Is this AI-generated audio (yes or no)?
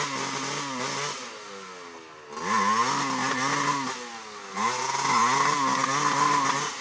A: no